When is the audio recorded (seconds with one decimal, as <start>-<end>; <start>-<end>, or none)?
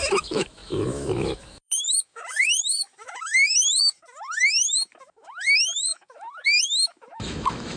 none